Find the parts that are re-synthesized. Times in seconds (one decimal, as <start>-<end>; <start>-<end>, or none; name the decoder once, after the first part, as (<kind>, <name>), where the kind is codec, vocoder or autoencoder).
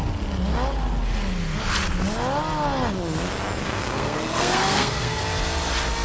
3.6-5.2 (codec, SNAC)